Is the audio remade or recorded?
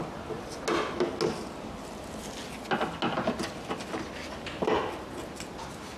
recorded